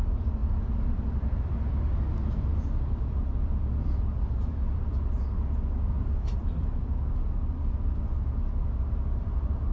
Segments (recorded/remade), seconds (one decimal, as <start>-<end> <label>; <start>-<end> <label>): 0.0-0.4 recorded; 0.4-1.7 remade; 1.7-2.5 recorded; 2.5-5.2 remade; 5.2-6.4 recorded; 6.4-8.0 remade; 8.0-9.7 recorded